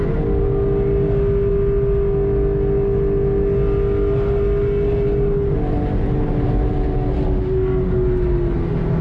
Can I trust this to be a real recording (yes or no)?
yes